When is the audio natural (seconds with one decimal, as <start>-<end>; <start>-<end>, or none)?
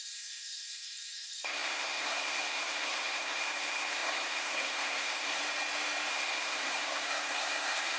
5.4-6.1